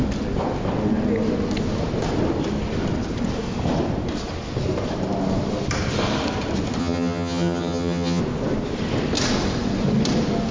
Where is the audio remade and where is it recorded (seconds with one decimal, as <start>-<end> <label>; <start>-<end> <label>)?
0.0-6.8 recorded; 6.8-8.2 remade; 8.2-10.5 recorded